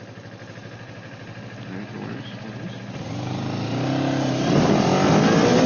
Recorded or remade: recorded